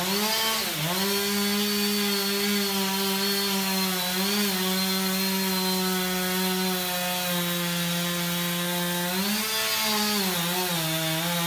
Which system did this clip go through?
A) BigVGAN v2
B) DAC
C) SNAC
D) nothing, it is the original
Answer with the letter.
D